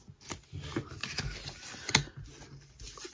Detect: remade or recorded recorded